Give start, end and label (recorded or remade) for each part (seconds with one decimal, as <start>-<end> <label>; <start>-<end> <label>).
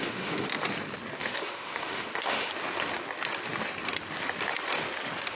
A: 0.0-0.5 remade; 0.5-1.2 recorded; 1.2-2.5 remade; 2.5-5.3 recorded